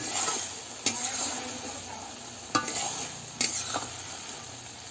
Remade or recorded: recorded